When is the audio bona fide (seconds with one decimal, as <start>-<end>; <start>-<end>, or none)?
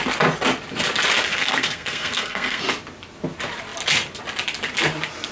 0.0-1.3; 2.6-5.3